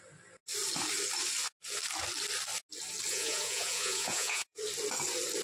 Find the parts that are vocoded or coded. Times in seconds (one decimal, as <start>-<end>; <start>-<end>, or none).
3.1-4.6